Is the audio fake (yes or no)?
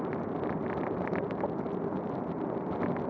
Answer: no